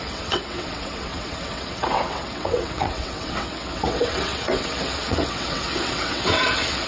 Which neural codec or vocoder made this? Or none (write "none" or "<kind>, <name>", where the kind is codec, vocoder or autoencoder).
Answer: vocoder, WaveNeXt